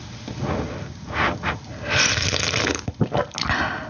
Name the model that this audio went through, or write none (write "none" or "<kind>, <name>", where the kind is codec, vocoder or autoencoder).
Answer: none